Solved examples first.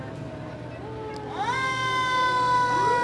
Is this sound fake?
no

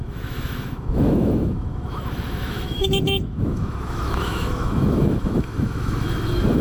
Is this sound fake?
yes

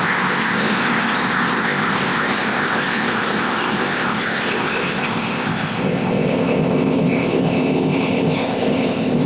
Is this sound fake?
yes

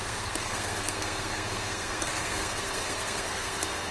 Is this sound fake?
yes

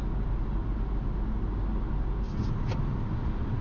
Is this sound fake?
no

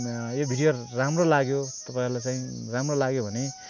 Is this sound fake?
no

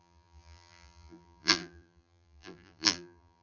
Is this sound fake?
yes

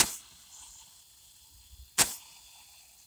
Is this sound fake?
no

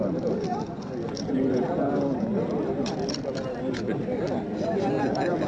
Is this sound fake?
yes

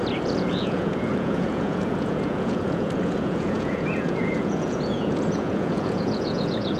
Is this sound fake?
yes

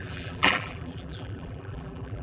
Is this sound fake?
yes